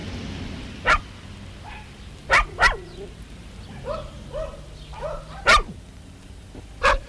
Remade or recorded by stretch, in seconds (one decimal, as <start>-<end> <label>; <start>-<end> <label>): 0.0-0.7 remade; 0.7-7.1 recorded